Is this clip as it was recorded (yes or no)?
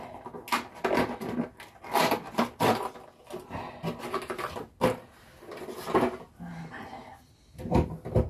yes